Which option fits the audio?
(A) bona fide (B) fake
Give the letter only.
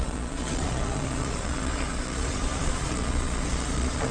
B